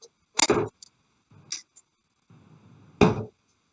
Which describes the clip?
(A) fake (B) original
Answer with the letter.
B